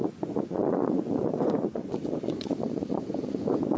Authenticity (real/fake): fake